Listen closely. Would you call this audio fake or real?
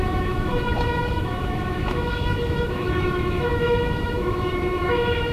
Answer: fake